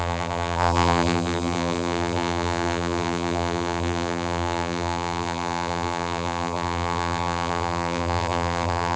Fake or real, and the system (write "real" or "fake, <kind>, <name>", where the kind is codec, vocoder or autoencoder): fake, vocoder, BigVGAN v2